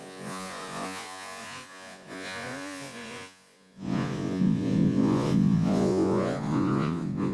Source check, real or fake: fake